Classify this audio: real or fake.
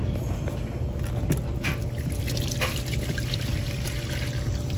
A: real